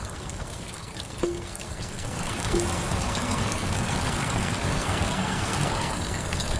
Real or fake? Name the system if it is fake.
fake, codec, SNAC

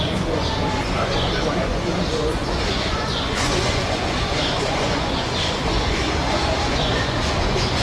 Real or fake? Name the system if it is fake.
fake, vocoder, Vocos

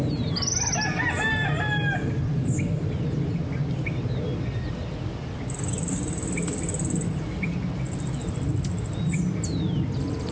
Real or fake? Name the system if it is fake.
real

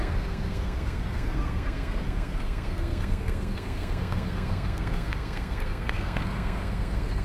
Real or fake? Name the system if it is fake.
fake, codec, SNAC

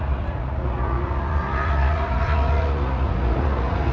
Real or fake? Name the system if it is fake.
fake, vocoder, Vocos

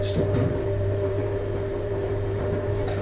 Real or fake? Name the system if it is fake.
fake, vocoder, BigVGAN v2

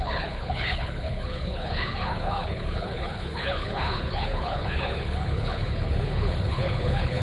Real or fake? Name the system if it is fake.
fake, codec, HILCodec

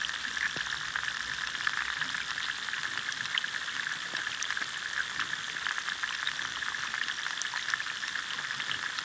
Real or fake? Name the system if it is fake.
real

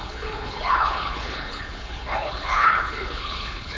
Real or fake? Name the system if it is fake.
fake, codec, HILCodec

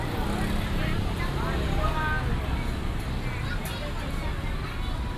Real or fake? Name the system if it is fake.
real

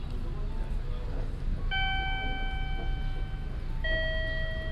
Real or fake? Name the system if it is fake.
real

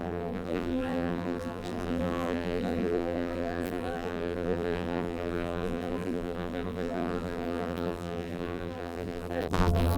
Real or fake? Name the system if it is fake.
fake, vocoder, BigVGAN v2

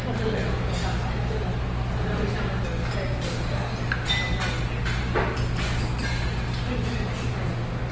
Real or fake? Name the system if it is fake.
real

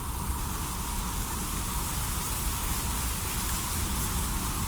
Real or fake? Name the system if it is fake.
real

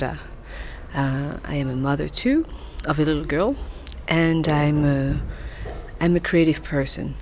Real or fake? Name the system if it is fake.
real